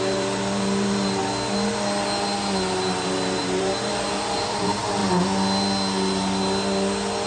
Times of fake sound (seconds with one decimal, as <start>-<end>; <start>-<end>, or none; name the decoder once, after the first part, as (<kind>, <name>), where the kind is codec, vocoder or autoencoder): 0.0-1.2 (vocoder, BigVGAN v2); 3.4-5.0